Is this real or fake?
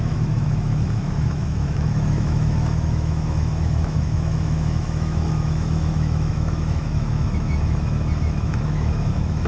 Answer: fake